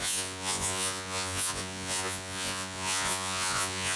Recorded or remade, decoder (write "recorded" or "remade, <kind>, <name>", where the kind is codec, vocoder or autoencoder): remade, vocoder, Vocos